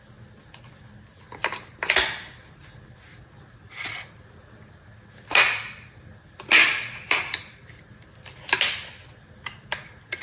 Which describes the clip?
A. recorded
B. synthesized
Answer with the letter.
A